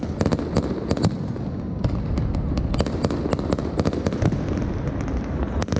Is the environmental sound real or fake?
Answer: real